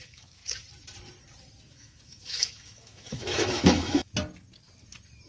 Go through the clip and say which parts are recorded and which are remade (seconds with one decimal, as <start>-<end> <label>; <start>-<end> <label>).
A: 0.0-0.4 remade; 0.4-1.7 recorded; 1.7-4.1 remade; 4.1-5.3 recorded